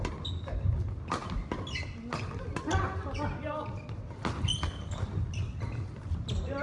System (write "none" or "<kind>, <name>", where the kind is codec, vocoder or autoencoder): none